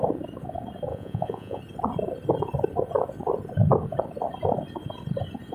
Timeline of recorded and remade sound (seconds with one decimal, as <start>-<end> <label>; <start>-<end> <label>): 0.0-0.9 recorded; 0.9-1.6 remade; 1.6-5.5 recorded